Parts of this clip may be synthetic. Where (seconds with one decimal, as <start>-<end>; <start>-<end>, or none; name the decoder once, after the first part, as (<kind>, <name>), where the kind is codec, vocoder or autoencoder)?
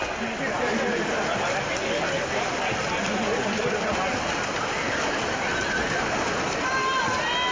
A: none